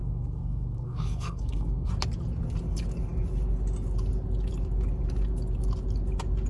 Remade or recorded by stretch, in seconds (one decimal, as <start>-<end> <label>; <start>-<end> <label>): 0.0-1.9 remade; 1.9-6.5 recorded